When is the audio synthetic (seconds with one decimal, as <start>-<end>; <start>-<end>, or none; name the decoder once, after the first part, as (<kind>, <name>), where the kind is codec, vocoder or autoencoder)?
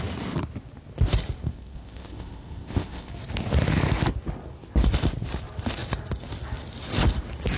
1.5-3.1 (codec, ZipCodec)